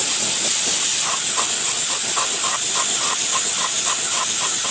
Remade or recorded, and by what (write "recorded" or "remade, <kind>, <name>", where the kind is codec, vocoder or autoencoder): recorded